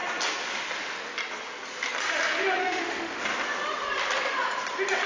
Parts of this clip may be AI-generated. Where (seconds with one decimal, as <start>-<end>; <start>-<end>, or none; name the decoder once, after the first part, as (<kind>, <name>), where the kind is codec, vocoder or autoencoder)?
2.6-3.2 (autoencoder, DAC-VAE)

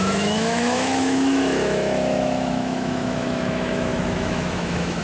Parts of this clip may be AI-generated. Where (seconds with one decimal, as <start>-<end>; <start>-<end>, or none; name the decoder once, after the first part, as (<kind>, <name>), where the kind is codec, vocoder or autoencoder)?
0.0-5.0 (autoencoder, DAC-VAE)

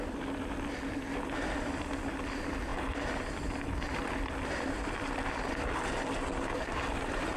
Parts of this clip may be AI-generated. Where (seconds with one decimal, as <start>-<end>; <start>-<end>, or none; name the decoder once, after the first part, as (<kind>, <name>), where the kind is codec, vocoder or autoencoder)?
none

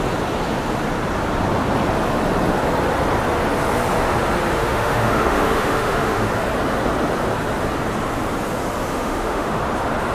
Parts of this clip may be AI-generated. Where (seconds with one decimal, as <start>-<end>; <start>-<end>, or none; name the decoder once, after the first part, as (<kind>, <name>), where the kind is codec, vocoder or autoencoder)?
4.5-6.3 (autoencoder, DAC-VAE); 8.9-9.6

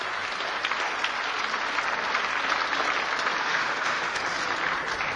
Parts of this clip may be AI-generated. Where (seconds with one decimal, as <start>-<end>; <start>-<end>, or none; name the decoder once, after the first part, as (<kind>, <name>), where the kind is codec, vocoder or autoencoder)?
3.4-4.2 (autoencoder, DAC-VAE)

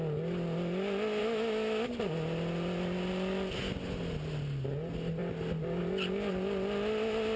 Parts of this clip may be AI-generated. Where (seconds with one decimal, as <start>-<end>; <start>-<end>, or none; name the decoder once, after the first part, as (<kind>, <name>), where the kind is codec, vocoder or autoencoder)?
1.2-1.9 (autoencoder, DAC-VAE)

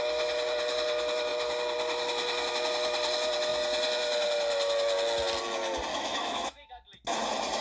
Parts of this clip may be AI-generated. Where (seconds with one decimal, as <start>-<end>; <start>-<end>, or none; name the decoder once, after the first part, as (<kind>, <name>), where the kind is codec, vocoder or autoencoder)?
5.9-6.7 (autoencoder, DAC-VAE)

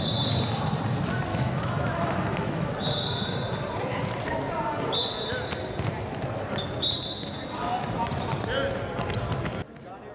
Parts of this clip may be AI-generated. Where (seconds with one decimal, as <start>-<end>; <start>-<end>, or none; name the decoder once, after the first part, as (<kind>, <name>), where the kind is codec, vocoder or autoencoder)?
1.3-2.7 (autoencoder, DAC-VAE)